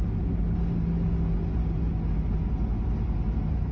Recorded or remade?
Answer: recorded